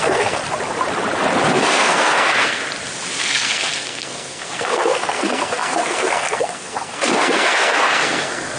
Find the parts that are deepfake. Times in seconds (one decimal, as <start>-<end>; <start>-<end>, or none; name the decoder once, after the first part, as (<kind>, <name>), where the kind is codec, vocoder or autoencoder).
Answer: 0.0-0.4 (codec, SNAC); 1.5-2.6; 3.2-8.6